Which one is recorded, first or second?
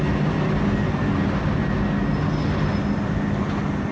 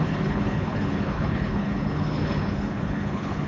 first